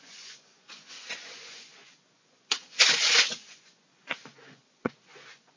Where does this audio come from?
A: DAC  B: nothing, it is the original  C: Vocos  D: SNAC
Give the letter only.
C